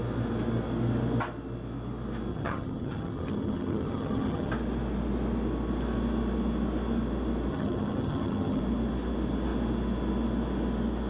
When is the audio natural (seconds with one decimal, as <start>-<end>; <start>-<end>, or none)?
0.0-2.3; 4.5-7.5; 8.6-11.1